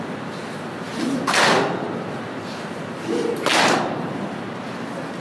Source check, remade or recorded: recorded